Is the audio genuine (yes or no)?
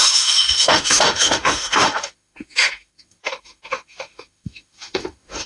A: no